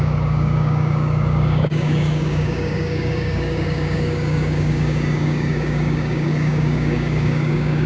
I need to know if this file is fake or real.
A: fake